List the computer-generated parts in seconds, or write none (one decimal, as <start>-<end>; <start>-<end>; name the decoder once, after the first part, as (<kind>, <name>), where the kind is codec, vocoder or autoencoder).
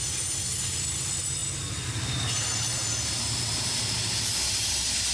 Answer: none